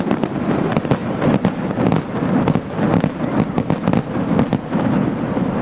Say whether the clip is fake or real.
real